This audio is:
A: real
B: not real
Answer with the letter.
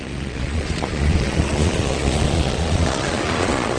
B